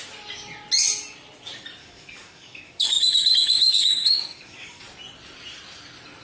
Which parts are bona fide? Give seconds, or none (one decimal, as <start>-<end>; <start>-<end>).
0.0-1.8; 4.8-6.2